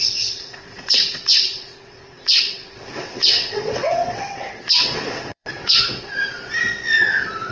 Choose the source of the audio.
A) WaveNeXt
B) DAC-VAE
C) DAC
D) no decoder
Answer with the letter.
A